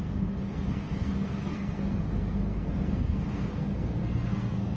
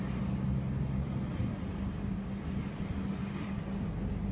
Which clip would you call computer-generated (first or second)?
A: first